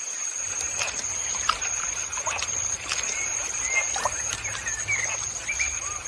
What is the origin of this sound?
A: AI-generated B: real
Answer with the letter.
B